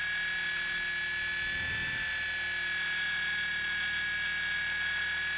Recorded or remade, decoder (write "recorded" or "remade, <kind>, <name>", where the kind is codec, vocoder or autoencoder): recorded